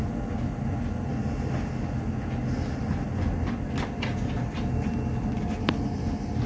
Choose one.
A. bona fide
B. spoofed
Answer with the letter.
A